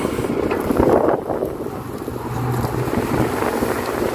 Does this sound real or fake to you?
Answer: real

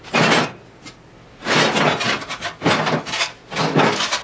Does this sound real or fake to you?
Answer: real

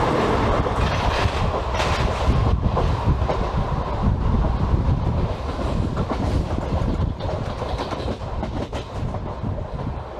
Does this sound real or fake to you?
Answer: real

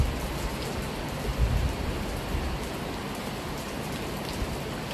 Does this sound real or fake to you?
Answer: real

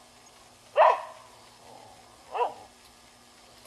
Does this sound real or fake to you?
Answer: real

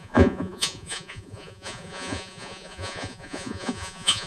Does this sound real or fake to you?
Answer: fake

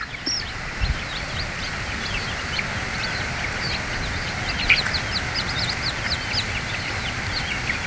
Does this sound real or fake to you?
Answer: real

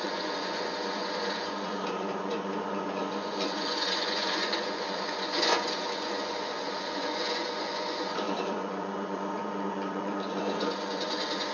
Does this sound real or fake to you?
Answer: fake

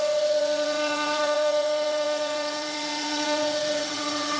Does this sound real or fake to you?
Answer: fake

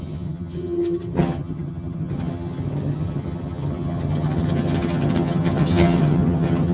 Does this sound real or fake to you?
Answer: fake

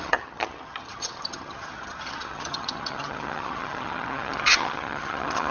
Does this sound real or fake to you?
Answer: fake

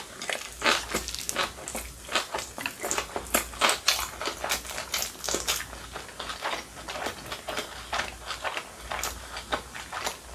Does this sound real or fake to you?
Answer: real